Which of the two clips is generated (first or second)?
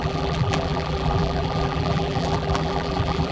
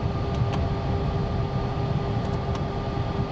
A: first